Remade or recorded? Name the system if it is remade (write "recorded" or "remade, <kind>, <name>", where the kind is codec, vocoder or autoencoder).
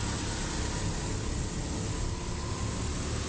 recorded